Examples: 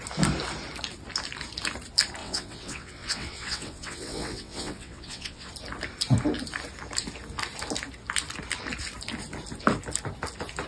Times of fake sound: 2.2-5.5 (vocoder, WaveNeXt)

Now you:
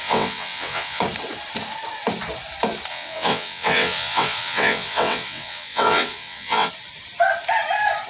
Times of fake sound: 0.0-1.0 (vocoder, WaveNeXt); 2.9-6.7

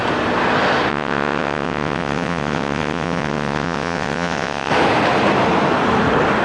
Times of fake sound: 0.9-4.7 (vocoder, WaveNeXt)

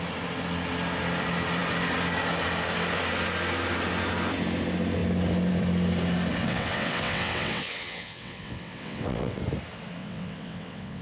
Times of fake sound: 6.4-9.4 (vocoder, WaveNeXt); 10.0-11.0

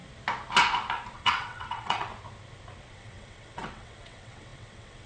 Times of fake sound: 1.1-2.1 (vocoder, WaveNeXt); 2.9-5.1